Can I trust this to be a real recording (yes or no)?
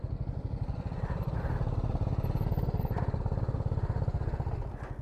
yes